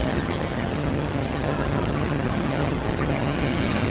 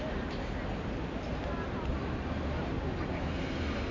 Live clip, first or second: second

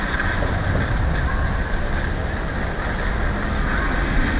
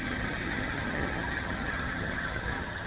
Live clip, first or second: first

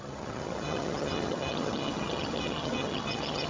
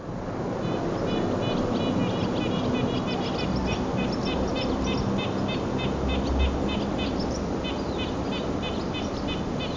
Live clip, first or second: second